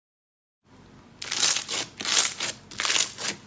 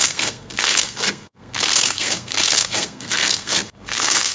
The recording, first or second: first